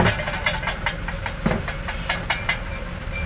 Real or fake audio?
real